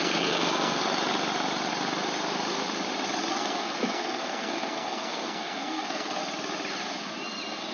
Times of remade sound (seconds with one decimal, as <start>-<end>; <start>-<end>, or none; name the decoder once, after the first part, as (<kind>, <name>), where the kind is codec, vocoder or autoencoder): 0.0-0.8 (codec, SNAC); 3.3-6.2